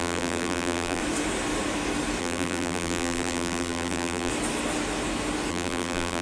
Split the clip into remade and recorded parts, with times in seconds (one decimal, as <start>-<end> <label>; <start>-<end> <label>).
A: 0.0-1.0 remade; 1.0-2.2 recorded; 2.2-4.3 remade; 4.3-5.5 recorded; 5.5-6.2 remade